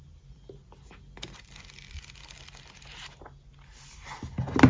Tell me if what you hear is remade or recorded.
recorded